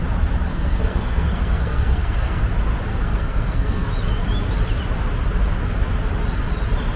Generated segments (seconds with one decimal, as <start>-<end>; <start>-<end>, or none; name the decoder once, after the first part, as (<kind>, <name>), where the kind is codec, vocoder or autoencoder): 0.5-2.4 (codec, SNAC); 2.9-3.9